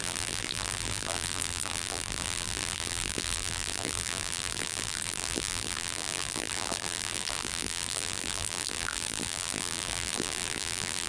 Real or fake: fake